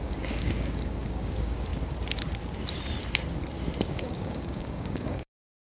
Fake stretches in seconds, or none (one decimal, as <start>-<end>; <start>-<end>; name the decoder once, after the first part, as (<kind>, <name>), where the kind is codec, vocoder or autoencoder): 0.0-1.7 (codec, DAC); 3.9-5.7